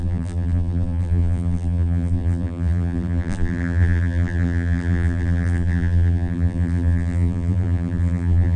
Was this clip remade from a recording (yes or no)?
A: yes